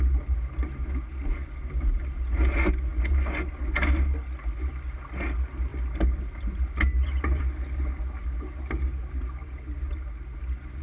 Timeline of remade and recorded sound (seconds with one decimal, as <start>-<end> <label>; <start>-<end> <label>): 0.0-10.8 recorded